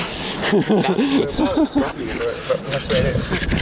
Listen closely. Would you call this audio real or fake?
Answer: real